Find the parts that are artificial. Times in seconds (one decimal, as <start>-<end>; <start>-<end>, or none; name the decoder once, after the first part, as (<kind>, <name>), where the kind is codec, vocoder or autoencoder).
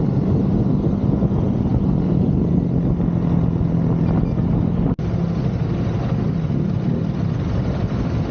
none